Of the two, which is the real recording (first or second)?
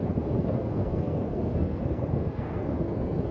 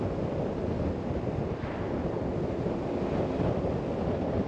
second